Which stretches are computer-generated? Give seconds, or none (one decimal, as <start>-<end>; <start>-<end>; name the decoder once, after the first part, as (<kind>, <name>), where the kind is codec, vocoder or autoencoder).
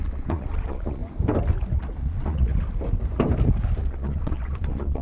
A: 0.0-1.0 (vocoder, Vocos); 2.0-2.5; 3.8-5.0